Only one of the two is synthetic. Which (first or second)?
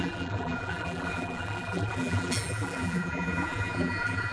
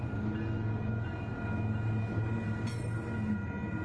first